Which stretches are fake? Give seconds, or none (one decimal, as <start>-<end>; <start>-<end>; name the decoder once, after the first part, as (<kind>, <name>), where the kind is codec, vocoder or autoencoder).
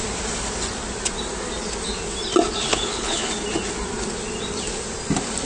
2.7-3.3 (codec, HILCodec)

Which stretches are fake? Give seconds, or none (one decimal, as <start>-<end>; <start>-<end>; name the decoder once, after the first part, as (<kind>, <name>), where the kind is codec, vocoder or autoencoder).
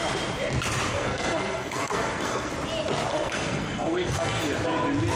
0.9-2.5 (codec, SNAC); 3.1-4.6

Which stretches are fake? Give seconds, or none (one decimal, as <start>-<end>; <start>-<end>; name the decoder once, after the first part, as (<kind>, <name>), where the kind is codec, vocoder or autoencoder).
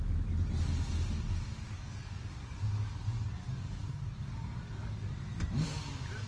1.5-5.3 (codec, DAC)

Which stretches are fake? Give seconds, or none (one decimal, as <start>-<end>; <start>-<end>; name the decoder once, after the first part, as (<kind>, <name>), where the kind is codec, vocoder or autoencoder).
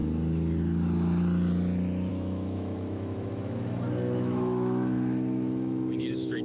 2.1-6.4 (autoencoder, DAC-VAE)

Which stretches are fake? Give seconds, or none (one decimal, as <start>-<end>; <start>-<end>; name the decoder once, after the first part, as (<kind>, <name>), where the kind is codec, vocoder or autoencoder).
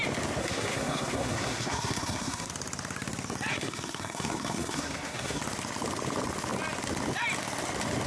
0.4-2.5 (codec, SNAC); 3.5-5.4